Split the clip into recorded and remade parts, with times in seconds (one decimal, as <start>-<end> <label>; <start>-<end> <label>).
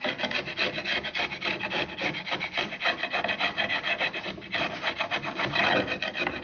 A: 0.0-6.4 recorded